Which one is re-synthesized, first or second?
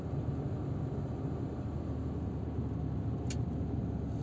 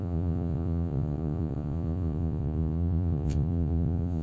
second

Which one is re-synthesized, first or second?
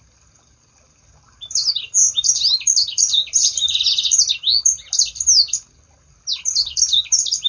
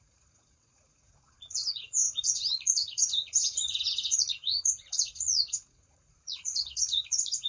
second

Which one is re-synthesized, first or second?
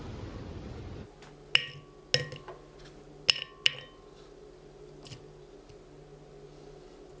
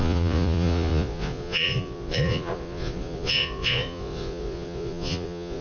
second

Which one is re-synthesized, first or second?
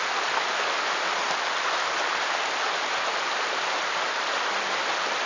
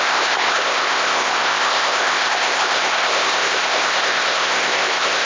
second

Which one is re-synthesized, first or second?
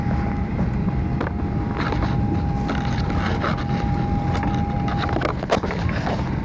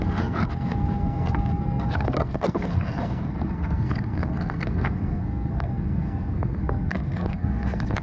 second